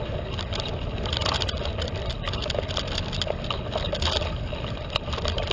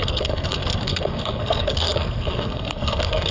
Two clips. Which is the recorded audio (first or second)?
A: first